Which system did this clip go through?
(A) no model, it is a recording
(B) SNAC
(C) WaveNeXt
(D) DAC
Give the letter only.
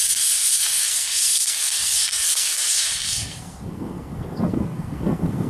B